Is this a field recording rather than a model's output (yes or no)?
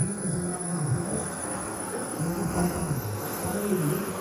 no